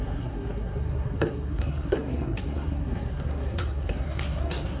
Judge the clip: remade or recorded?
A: remade